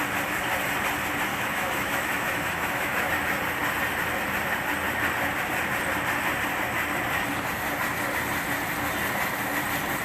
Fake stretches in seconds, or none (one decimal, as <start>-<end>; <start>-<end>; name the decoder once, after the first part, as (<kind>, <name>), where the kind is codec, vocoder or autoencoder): 1.3-3.1 (autoencoder, DAC-VAE)